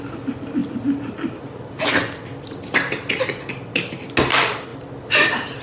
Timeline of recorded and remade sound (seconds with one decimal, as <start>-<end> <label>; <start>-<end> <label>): 0.0-0.6 recorded; 0.6-3.4 remade; 3.4-4.7 recorded; 4.7-5.6 remade